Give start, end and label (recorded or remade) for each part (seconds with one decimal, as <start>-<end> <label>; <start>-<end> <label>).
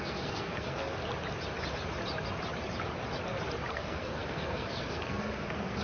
0.0-1.0 remade; 1.0-3.7 recorded; 3.7-5.8 remade